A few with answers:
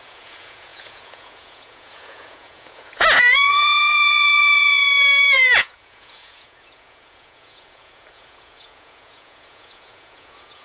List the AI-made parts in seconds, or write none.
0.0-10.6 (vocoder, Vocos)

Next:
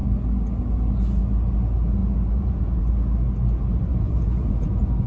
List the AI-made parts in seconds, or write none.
2.0-2.8 (vocoder, Vocos); 3.9-5.1

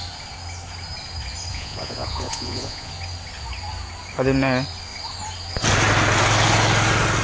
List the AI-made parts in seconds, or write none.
1.5-2.9 (vocoder, Vocos)

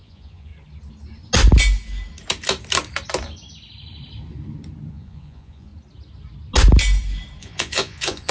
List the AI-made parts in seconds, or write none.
0.0-0.5 (vocoder, Vocos); 4.9-5.7; 7.4-8.3

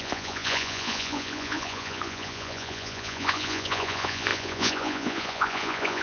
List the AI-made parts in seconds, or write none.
0.0-6.0 (vocoder, Vocos)

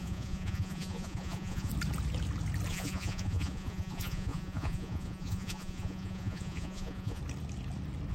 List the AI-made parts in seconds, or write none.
0.0-1.7 (vocoder, Vocos); 2.7-7.2

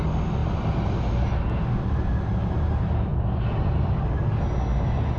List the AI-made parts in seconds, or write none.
none